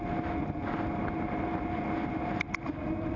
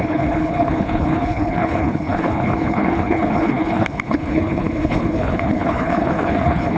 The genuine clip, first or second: first